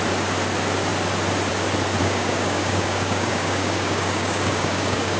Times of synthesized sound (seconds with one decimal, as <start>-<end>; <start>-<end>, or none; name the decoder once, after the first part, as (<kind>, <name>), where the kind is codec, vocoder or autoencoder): 2.0-5.2 (codec, DAC)